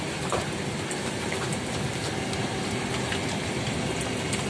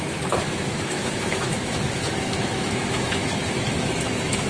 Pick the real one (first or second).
first